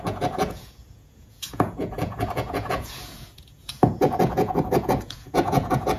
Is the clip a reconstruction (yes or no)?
yes